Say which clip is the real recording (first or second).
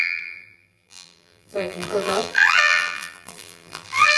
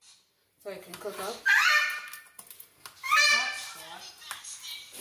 second